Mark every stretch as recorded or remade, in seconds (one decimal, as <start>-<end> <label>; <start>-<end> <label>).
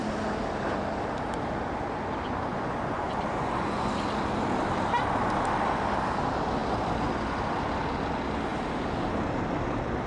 0.0-2.5 recorded; 2.5-3.9 remade; 3.9-10.1 recorded